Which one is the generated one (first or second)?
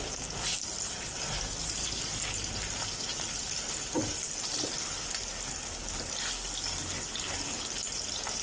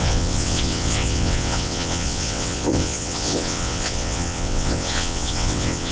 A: second